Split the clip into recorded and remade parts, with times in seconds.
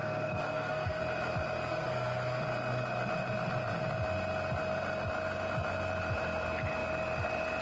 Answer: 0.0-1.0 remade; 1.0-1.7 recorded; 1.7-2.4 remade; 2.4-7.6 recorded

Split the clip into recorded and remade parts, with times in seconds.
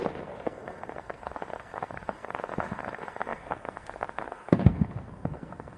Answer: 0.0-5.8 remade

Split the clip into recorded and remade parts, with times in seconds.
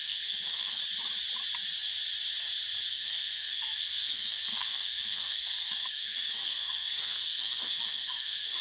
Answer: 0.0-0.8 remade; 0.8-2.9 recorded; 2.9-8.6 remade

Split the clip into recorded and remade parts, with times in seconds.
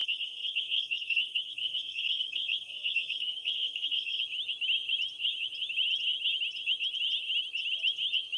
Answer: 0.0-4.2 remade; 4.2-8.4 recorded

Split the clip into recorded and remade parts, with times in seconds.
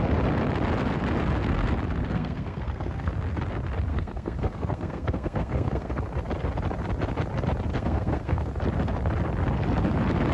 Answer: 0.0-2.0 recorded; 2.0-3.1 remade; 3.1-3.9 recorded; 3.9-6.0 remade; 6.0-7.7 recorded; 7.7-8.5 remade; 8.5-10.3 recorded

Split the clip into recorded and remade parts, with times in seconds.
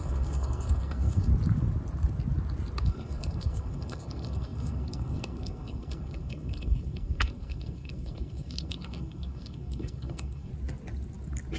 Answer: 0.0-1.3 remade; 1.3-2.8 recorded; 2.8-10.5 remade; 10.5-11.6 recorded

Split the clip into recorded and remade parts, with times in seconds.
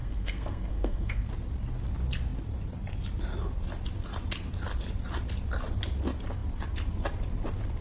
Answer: 0.0-1.3 remade; 1.3-7.8 recorded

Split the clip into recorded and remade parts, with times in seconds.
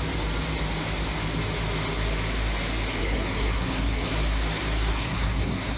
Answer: 0.0-3.0 recorded; 3.0-4.1 remade; 4.1-4.9 recorded; 4.9-5.8 remade